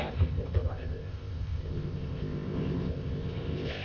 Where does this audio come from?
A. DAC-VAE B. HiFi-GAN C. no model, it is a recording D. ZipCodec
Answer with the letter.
D